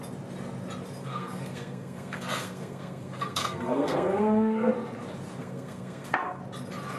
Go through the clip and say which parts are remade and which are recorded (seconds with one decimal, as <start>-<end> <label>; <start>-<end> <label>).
0.0-1.0 recorded; 1.0-4.7 remade; 4.7-5.4 recorded; 5.4-6.4 remade; 6.4-7.0 recorded